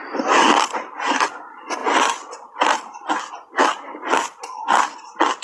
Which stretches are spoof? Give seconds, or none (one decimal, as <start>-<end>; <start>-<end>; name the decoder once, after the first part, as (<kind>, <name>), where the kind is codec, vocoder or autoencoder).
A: none